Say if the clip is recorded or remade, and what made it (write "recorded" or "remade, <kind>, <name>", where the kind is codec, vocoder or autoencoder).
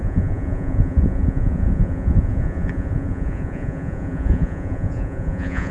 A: remade, vocoder, Vocos